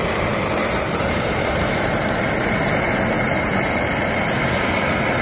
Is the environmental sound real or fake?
fake